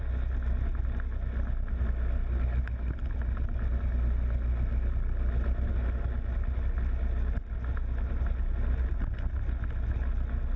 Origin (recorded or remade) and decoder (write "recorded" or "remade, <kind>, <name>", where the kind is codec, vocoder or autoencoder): recorded